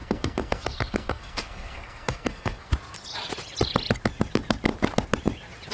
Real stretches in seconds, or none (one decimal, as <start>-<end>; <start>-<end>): 2.7-5.7